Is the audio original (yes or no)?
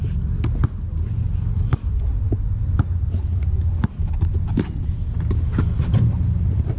yes